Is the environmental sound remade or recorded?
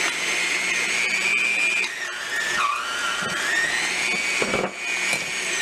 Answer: recorded